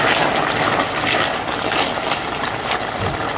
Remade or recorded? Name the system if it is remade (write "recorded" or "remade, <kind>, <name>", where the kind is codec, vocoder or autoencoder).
recorded